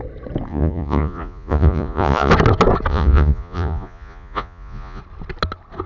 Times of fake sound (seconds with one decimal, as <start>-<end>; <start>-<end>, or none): 0.5-2.3; 2.9-5.0